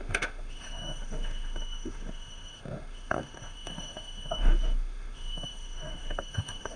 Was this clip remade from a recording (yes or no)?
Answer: yes